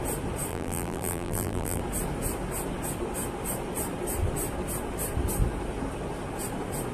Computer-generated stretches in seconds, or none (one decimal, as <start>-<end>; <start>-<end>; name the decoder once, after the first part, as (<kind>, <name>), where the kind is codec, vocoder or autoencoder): 0.5-1.8 (vocoder, BigVGAN v2)